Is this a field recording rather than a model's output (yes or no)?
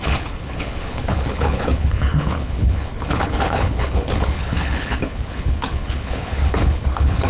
no